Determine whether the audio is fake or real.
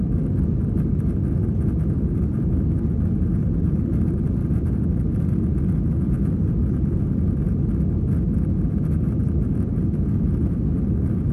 real